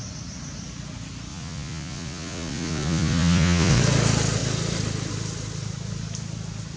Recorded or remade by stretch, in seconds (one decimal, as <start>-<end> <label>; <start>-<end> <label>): 0.0-1.3 recorded; 1.3-3.8 remade; 3.8-6.8 recorded